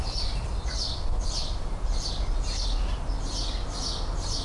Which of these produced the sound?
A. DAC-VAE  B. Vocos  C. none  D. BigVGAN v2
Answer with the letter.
C